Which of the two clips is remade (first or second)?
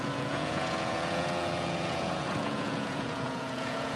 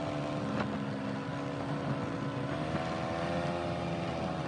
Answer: first